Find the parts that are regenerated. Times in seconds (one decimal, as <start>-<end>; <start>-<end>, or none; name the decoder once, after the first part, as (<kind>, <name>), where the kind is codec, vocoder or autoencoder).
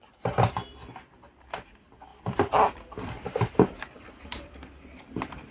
2.1-4.2 (vocoder, BigVGAN v2)